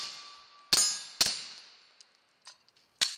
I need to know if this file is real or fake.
real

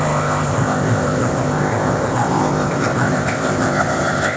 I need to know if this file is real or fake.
fake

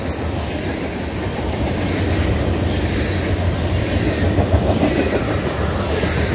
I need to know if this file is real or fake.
real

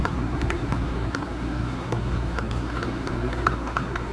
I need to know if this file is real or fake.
fake